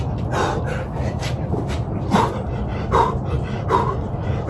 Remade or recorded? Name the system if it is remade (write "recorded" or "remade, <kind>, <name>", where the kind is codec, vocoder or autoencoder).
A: remade, vocoder, BigVGAN v2